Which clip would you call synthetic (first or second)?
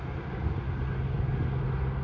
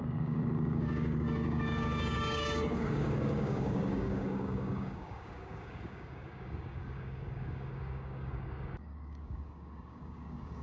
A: second